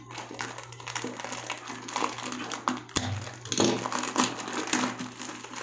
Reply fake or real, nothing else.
real